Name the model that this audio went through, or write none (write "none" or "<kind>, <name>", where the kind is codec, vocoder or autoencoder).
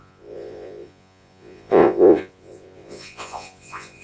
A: vocoder, Vocos